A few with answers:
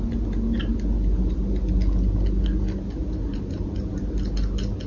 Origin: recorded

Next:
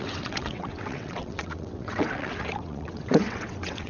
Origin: remade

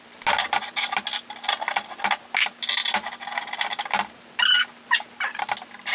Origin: recorded